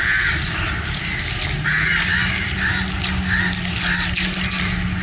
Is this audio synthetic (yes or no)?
no